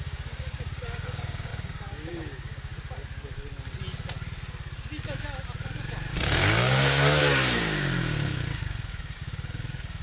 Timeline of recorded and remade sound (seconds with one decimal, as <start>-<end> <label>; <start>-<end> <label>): 0.0-2.7 remade; 2.7-6.1 recorded; 6.1-10.0 remade